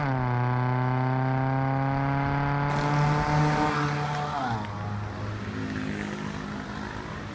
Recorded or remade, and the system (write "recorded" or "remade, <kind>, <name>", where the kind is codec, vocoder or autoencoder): recorded